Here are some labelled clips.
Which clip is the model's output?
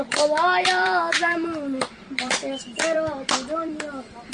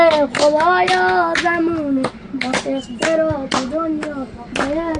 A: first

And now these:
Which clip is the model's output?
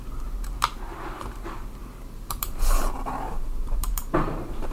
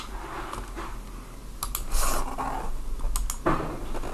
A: first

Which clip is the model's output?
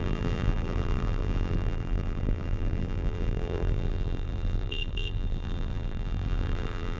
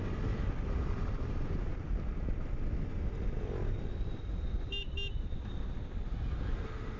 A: first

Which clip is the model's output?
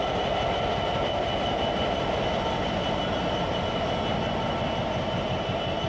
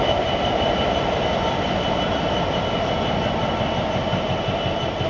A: second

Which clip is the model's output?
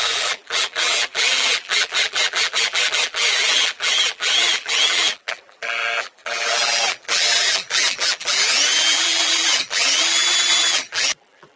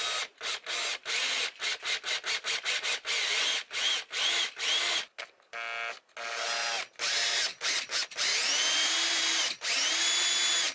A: first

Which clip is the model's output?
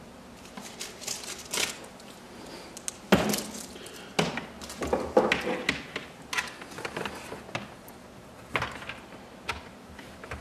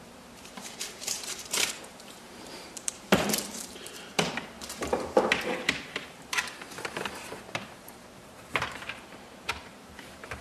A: second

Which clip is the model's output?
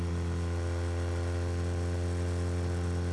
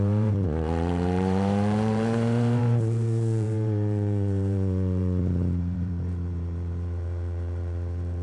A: second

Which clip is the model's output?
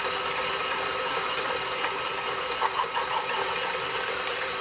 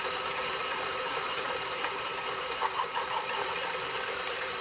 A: second